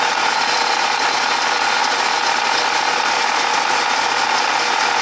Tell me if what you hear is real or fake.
real